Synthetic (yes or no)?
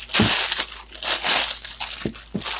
no